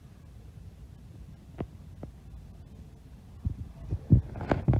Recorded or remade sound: recorded